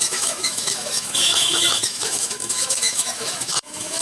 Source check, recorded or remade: remade